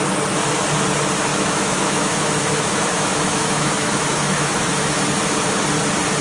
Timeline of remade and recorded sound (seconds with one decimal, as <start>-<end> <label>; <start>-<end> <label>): 0.0-1.3 recorded; 1.3-5.0 remade; 5.0-6.2 recorded